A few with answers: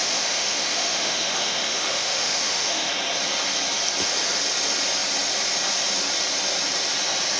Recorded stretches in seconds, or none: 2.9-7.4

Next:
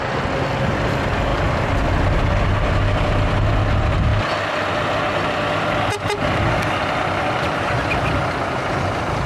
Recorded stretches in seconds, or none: 0.0-9.3

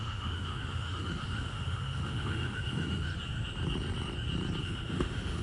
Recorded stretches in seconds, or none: 3.1-4.6